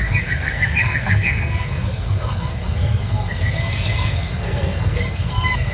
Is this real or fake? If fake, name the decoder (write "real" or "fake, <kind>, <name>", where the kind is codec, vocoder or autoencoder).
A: fake, codec, SNAC